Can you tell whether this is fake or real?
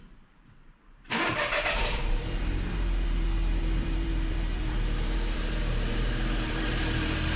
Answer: fake